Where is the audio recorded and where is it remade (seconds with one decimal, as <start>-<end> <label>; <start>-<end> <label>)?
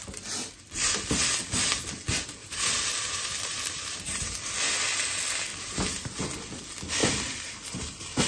0.0-2.4 recorded; 2.4-4.5 remade; 4.5-7.0 recorded; 7.0-8.3 remade